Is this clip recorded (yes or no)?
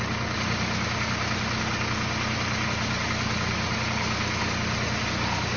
yes